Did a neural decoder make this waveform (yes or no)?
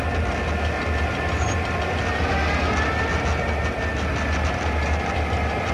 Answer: no